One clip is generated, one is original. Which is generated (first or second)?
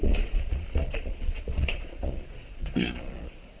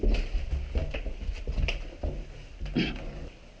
first